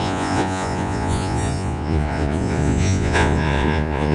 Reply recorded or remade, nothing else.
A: remade